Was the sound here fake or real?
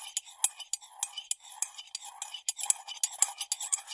real